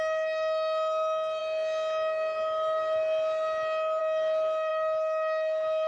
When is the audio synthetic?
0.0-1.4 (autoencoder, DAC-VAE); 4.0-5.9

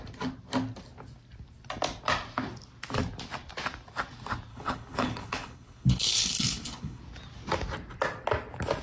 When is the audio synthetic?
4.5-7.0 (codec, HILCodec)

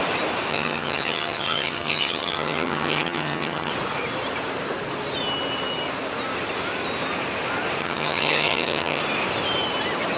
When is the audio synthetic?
0.5-3.7 (vocoder, HiFi-GAN); 7.8-9.0

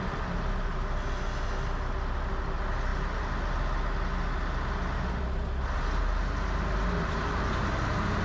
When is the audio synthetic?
none

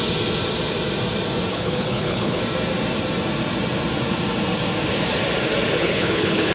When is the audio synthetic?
1.5-2.4 (codec, HILCodec); 5.8-6.5

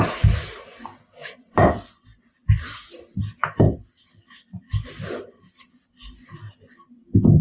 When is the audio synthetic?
0.9-1.6 (vocoder, BigVGAN v2)